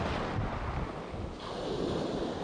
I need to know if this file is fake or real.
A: real